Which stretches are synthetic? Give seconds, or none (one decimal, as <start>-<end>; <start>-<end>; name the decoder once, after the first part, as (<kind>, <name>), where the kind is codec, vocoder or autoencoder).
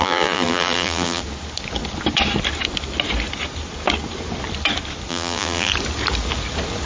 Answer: 0.0-1.2 (vocoder, BigVGAN v2); 5.1-5.7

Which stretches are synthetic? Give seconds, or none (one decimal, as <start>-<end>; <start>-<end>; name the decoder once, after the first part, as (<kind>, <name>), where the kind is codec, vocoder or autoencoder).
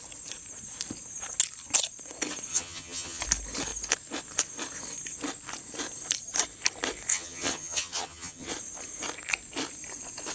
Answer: 2.5-3.2 (vocoder, HiFi-GAN); 7.1-8.5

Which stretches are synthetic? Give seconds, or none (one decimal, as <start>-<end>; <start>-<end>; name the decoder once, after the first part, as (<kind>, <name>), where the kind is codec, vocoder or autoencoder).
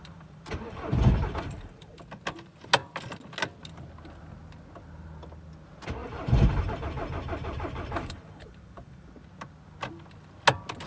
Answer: 0.0-1.9 (vocoder, BigVGAN v2); 6.0-9.1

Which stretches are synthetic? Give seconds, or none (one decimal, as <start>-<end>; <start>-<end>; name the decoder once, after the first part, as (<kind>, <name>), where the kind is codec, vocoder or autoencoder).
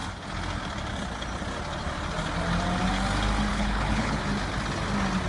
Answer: 3.5-4.2 (codec, HILCodec)